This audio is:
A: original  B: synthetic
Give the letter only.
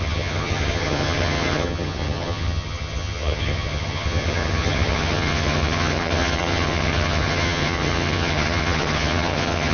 B